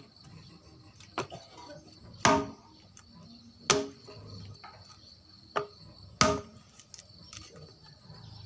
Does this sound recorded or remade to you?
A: recorded